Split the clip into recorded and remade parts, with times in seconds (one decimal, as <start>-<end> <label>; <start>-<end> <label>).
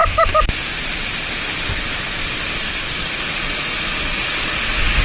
0.0-3.0 recorded; 3.0-5.0 remade